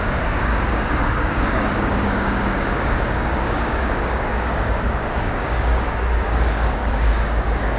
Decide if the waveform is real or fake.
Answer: fake